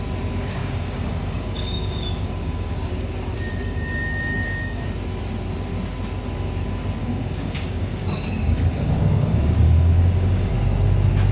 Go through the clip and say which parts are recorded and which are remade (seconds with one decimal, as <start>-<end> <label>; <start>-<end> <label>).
0.0-0.6 recorded; 0.6-2.9 remade; 2.9-3.5 recorded; 3.5-4.8 remade; 4.8-7.0 recorded; 7.0-10.5 remade; 10.5-11.3 recorded